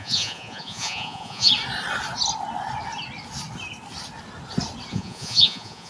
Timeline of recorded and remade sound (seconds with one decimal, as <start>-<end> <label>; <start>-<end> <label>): 0.0-1.5 remade; 1.5-4.9 recorded; 4.9-5.9 remade